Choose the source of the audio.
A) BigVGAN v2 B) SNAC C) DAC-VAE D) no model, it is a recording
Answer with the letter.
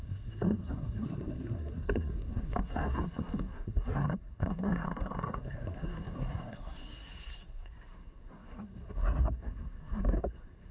B